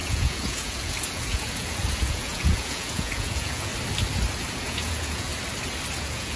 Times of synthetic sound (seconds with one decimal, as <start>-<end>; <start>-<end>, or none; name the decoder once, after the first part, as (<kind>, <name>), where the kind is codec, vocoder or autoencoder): 0.0-3.7 (vocoder, Vocos); 4.5-5.3; 6.0-6.4